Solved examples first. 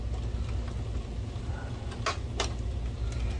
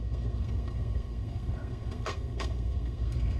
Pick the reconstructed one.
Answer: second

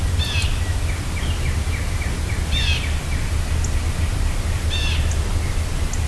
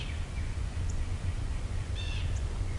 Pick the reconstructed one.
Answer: second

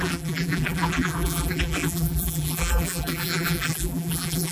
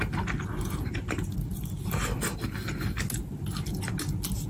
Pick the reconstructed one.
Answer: first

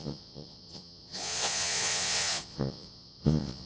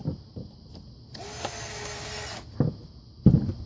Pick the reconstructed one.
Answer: first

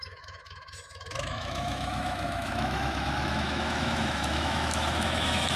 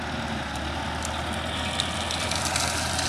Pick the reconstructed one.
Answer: first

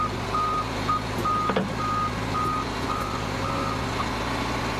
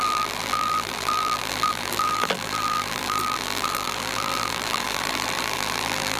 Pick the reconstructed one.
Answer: second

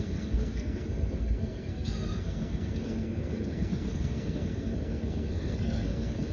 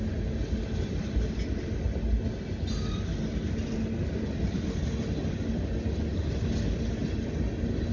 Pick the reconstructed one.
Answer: first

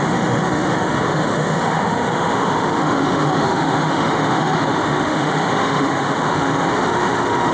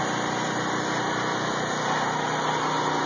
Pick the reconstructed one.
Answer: first